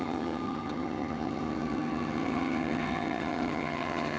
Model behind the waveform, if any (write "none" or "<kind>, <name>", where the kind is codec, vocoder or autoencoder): vocoder, HiFi-GAN